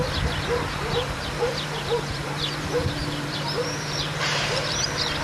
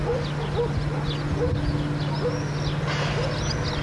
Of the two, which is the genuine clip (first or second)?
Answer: second